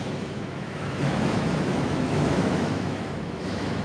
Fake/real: fake